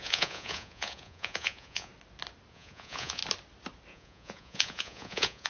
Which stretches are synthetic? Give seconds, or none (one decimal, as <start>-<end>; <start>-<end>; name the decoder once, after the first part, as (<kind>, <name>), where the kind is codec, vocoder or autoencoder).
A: 0.0-1.9 (vocoder, Vocos); 2.5-3.2; 3.9-5.5